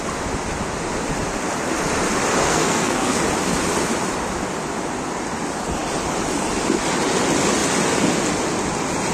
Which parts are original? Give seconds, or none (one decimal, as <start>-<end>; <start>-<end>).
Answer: 0.0-2.4; 3.2-9.1